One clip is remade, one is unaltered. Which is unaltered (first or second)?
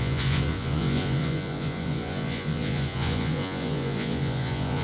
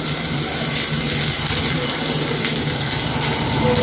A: second